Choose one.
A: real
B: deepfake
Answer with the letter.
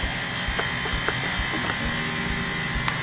A